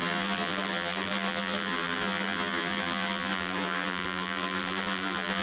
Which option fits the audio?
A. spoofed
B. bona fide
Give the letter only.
A